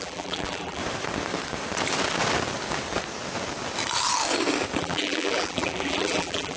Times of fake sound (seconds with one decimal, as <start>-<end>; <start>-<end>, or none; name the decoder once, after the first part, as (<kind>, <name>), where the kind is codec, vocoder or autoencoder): 0.0-0.8 (vocoder, BigVGAN v2); 4.8-6.6